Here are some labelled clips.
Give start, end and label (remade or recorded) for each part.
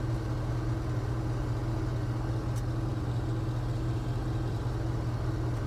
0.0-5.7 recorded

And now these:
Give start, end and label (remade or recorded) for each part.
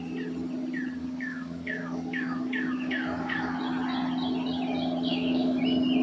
0.0-1.0 recorded; 1.0-3.6 remade; 3.6-5.1 recorded; 5.1-5.6 remade; 5.6-6.0 recorded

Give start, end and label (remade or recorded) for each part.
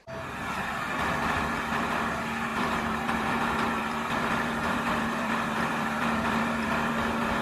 0.0-2.5 recorded; 2.5-6.9 remade; 6.9-7.4 recorded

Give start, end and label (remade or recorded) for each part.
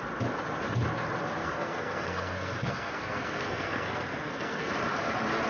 0.0-1.4 recorded; 1.4-4.7 remade; 4.7-5.5 recorded